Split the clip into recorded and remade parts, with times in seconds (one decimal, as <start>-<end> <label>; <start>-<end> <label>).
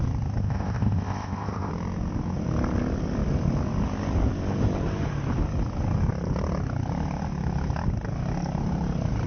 0.0-0.4 recorded; 0.4-1.7 remade; 1.7-9.3 recorded